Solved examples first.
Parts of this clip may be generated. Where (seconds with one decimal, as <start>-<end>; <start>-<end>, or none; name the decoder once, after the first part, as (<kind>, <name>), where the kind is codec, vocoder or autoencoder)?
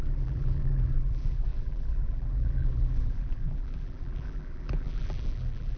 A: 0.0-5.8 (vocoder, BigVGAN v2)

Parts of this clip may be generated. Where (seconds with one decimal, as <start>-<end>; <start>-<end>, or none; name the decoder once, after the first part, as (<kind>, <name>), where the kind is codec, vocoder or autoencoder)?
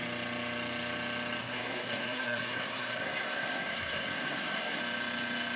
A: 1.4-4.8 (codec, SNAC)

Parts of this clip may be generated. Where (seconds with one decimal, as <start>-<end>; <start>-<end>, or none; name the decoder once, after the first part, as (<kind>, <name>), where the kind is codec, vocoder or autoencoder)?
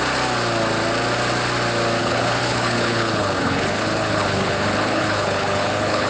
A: 2.0-6.1 (codec, HILCodec)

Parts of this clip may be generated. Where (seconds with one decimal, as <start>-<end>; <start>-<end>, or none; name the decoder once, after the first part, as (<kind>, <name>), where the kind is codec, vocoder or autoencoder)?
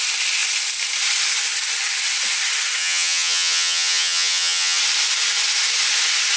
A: 2.8-4.8 (vocoder, HiFi-GAN)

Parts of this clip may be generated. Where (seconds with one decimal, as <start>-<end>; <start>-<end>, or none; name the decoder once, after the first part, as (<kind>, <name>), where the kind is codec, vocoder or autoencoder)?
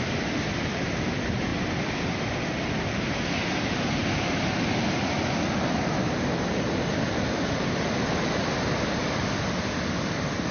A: none